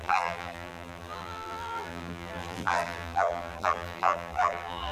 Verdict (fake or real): fake